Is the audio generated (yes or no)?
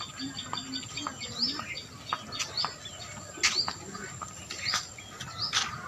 no